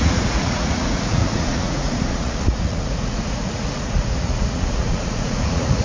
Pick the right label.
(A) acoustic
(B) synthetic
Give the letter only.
B